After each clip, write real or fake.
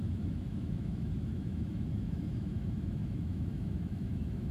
fake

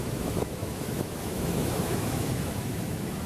fake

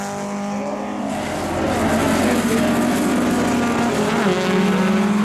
real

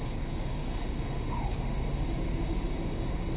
fake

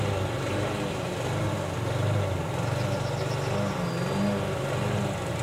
real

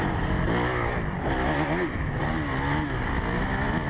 real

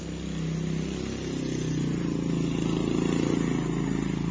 real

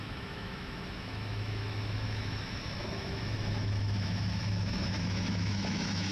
fake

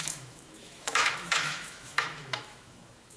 fake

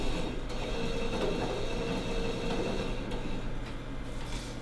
real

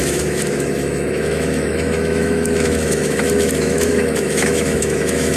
fake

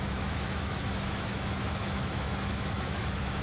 fake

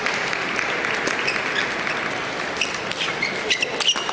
real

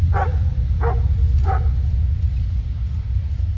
real